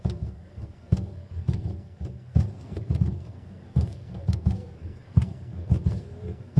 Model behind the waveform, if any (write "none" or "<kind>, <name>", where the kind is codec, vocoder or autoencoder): codec, SNAC